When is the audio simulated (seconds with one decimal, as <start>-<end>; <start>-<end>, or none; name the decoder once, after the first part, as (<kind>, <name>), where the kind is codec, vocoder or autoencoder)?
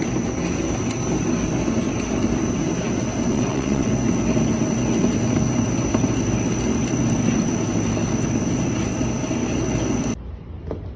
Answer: 3.3-3.9 (vocoder, WaveNeXt)